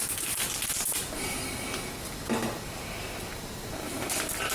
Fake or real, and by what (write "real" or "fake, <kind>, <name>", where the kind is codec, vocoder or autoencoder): real